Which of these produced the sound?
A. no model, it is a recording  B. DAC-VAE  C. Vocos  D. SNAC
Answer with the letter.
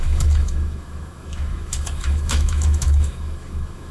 B